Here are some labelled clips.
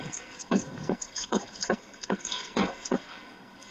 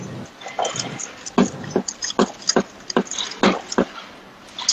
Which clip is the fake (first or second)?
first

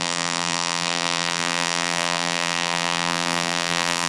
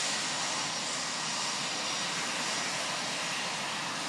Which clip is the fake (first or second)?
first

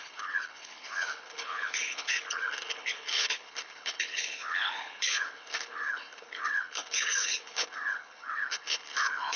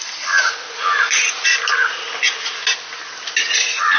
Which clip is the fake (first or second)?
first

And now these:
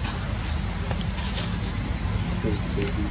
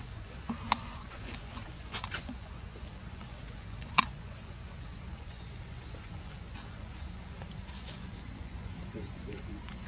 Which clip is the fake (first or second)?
second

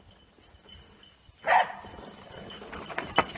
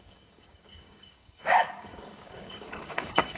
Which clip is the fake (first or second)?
second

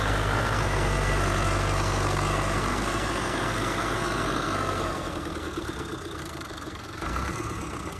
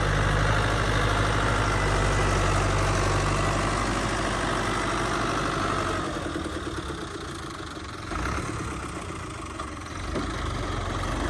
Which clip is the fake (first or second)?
first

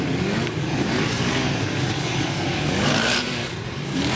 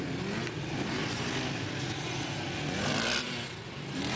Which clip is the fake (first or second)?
first